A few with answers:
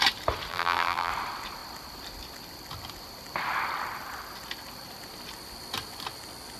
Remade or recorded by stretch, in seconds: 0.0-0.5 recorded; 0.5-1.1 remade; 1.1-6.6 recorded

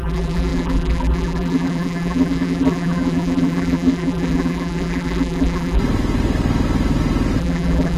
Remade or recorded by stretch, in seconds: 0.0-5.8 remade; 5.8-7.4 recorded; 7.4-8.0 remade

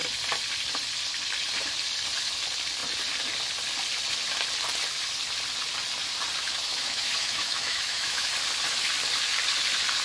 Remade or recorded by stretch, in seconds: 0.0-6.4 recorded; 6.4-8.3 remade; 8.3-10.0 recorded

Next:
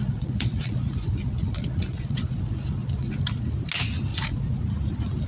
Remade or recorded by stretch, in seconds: 0.0-3.2 remade; 3.2-4.1 recorded; 4.1-4.6 remade; 4.6-5.3 recorded